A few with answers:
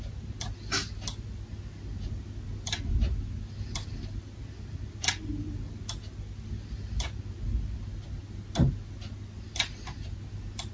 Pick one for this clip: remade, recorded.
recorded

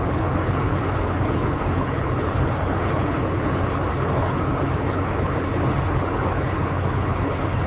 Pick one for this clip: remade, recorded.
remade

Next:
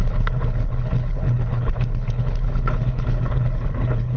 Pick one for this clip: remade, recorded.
remade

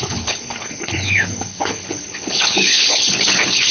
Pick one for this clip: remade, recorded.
remade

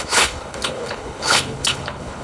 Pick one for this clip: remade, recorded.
remade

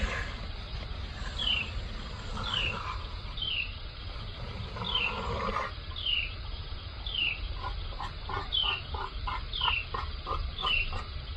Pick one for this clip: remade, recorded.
recorded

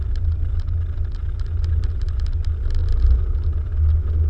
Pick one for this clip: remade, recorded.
recorded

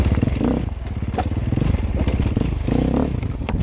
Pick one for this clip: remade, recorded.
recorded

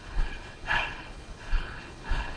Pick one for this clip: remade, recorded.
remade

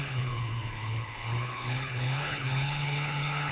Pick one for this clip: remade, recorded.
remade